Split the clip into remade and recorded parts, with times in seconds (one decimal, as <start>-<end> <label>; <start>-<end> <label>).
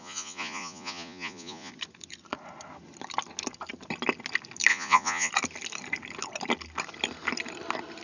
0.0-1.7 remade; 1.7-4.7 recorded; 4.7-5.3 remade; 5.3-8.0 recorded